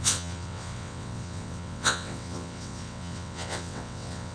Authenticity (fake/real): fake